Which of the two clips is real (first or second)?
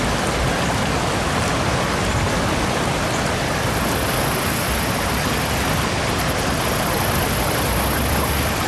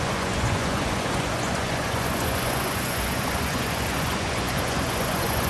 first